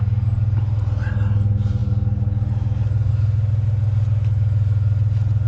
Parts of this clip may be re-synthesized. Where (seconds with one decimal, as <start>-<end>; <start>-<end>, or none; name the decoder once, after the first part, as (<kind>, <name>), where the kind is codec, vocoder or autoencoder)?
none